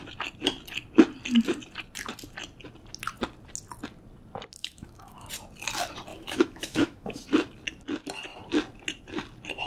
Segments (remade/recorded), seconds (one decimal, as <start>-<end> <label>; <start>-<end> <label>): 0.0-4.6 recorded; 4.6-5.3 remade; 5.3-6.1 recorded; 6.1-7.2 remade; 7.2-9.7 recorded